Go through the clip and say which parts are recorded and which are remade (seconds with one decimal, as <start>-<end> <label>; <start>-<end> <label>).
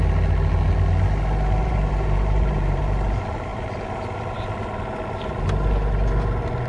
0.0-1.6 recorded; 1.6-2.8 remade; 2.8-6.7 recorded